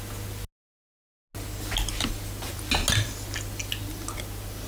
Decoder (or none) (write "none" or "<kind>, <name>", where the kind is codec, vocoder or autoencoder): none